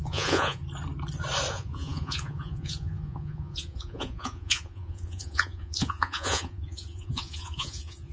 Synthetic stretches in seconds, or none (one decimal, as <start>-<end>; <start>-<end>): 0.0-0.6; 1.5-8.1